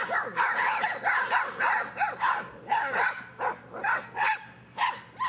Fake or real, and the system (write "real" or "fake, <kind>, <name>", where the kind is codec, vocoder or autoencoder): real